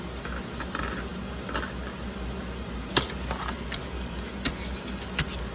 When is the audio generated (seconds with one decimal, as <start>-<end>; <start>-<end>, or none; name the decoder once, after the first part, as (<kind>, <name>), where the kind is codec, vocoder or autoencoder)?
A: none